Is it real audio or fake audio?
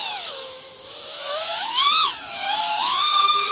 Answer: fake